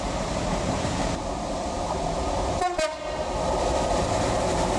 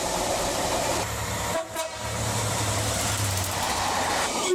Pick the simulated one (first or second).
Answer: second